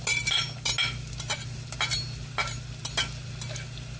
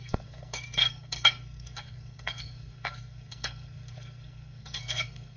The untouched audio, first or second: first